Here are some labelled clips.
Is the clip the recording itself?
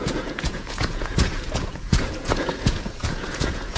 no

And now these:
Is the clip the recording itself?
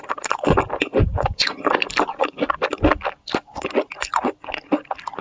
yes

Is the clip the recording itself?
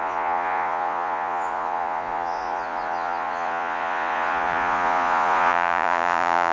no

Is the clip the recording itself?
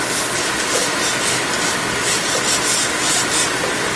yes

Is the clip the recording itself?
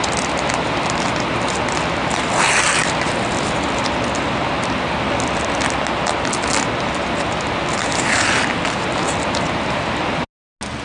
yes